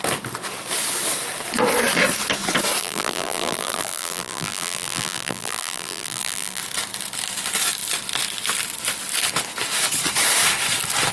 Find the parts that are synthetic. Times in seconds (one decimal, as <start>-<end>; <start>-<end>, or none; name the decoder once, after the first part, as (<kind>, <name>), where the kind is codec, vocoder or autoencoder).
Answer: 2.8-6.6 (vocoder, BigVGAN v2)